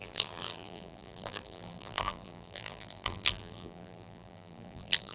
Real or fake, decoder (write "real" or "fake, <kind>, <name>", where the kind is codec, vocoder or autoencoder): fake, vocoder, BigVGAN v2